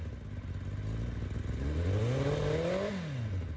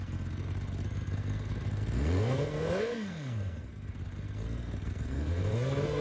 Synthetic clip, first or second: second